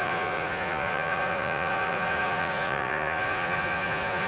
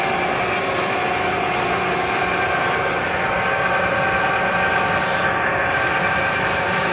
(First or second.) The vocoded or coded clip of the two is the first